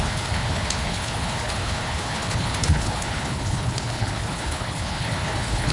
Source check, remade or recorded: remade